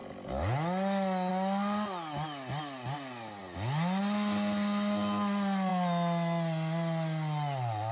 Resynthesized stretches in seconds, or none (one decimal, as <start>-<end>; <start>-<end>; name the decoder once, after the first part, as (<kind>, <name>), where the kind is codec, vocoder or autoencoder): none